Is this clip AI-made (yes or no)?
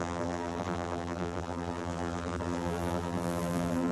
yes